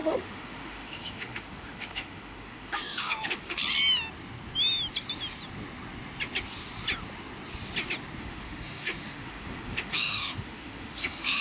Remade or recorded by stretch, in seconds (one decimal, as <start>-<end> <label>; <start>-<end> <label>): 0.0-3.6 remade; 3.6-8.2 recorded; 8.2-11.4 remade